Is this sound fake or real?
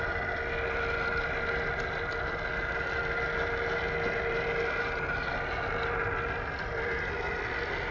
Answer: real